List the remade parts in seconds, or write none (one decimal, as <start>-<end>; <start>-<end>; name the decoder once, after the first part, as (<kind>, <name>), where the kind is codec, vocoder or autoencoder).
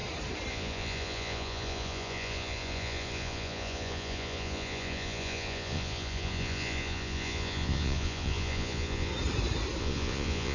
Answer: 0.5-9.1 (vocoder, Vocos); 9.8-10.5